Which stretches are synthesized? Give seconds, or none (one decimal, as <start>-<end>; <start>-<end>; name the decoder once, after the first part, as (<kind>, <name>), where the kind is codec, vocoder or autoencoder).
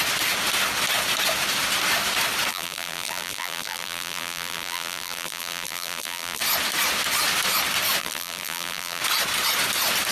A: 2.5-6.4 (vocoder, BigVGAN v2); 8.0-9.0